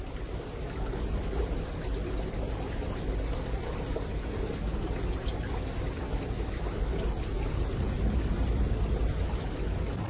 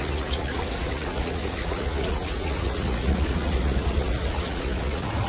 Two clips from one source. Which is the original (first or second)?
first